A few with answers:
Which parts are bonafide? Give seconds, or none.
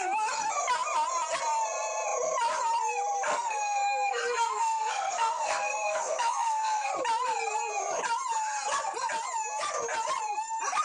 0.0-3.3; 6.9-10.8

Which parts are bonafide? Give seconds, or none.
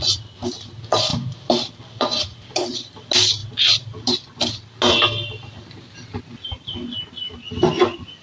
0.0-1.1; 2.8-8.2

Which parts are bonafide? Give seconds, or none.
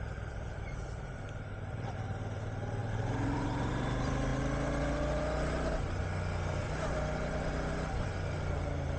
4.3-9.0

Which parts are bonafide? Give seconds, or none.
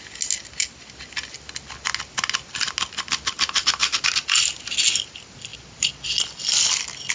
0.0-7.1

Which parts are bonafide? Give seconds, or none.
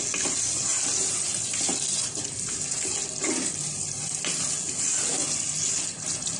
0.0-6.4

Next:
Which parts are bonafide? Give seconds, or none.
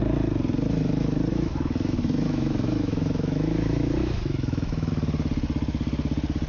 0.0-1.3; 4.9-6.5